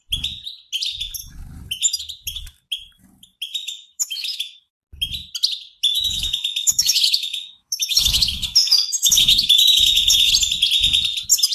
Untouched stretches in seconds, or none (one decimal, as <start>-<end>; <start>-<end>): 0.0-3.6; 4.7-5.9; 10.3-11.5